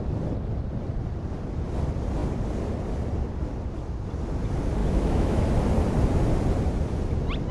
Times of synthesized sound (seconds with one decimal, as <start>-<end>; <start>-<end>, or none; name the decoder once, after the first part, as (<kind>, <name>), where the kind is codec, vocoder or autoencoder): 4.8-5.4 (autoencoder, DAC-VAE)

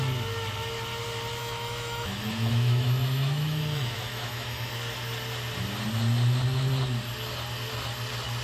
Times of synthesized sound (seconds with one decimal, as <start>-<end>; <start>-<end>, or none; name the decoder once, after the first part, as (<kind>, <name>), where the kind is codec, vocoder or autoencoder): 1.4-4.8 (autoencoder, DAC-VAE)

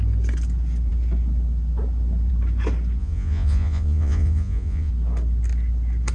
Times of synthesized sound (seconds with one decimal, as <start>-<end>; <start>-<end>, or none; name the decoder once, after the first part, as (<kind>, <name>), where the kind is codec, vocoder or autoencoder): 3.0-4.9 (vocoder, Vocos)